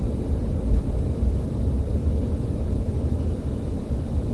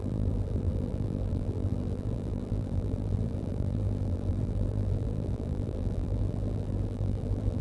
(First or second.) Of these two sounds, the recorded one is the first